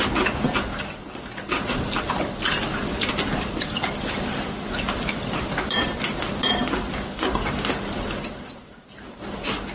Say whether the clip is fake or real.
real